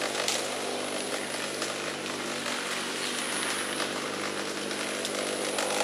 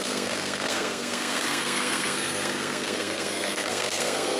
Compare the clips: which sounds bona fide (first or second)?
first